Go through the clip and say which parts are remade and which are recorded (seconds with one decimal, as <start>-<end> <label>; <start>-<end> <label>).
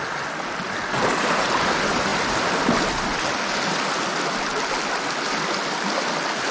0.0-6.5 recorded